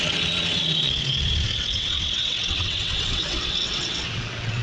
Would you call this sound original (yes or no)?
no